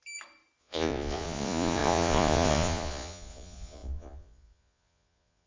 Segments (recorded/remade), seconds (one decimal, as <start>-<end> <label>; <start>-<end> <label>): 0.0-0.6 recorded; 0.6-5.5 remade